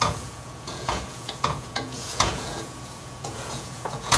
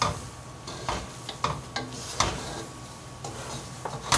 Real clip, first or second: second